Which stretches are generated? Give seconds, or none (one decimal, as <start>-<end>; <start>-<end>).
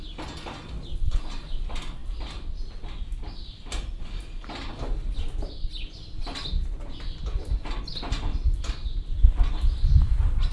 none